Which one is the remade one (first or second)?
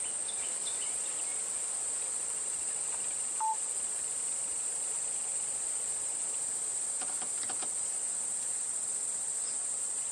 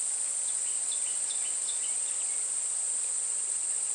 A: first